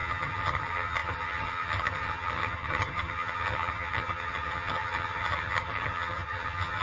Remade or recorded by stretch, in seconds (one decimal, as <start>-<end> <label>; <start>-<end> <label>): 0.0-6.8 remade